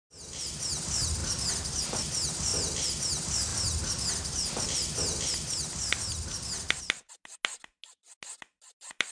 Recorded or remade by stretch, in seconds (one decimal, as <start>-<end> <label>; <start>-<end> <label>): 0.0-9.1 recorded